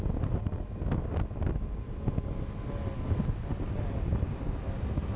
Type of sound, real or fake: real